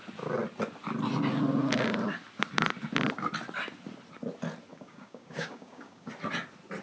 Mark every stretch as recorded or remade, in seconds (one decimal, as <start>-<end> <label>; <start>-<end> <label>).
0.0-4.7 recorded; 4.7-6.1 remade; 6.1-6.8 recorded